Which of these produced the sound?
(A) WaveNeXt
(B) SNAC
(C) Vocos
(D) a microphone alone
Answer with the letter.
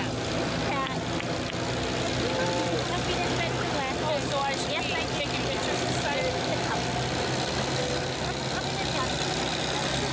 D